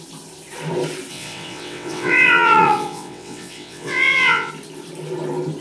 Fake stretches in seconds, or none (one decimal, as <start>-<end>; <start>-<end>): 1.1-4.5